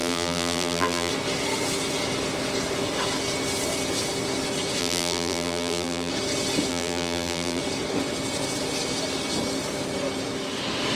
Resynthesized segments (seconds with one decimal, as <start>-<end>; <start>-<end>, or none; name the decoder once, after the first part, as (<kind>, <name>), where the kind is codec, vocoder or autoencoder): 0.0-1.1 (vocoder, BigVGAN v2); 4.8-6.1; 6.7-7.6